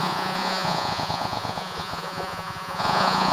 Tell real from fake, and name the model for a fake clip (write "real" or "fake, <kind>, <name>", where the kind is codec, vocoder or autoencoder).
fake, vocoder, Vocos